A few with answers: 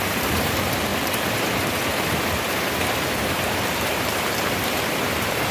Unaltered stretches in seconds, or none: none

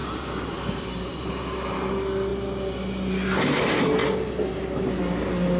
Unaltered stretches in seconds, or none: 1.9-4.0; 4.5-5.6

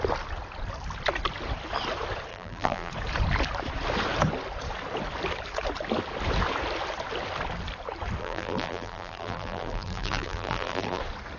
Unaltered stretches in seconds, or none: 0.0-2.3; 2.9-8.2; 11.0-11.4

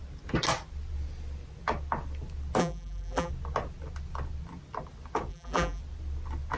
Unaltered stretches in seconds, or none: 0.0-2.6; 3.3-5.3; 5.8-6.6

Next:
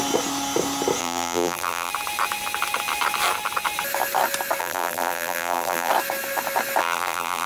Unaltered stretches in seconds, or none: 0.0-1.0; 1.9-4.6; 5.9-6.8